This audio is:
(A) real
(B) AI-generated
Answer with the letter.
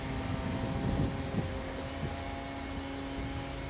A